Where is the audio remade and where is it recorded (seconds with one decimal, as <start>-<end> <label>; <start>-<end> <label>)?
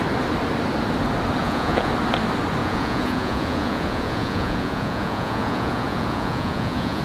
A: 0.0-1.4 recorded; 1.4-1.9 remade; 1.9-2.6 recorded; 2.6-7.0 remade